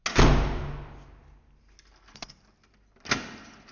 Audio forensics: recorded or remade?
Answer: recorded